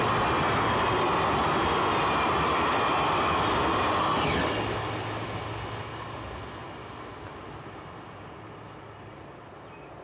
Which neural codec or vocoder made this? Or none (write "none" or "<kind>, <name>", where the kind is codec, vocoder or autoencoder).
none